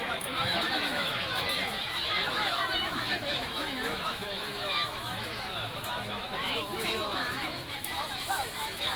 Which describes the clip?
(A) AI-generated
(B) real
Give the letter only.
A